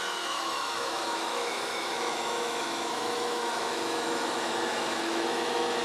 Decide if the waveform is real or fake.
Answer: fake